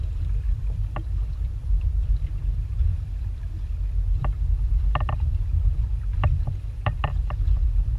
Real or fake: fake